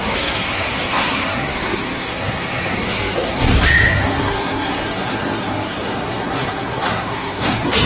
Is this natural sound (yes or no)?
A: no